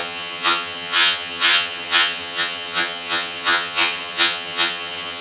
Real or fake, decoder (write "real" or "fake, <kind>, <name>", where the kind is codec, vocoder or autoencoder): fake, vocoder, HiFi-GAN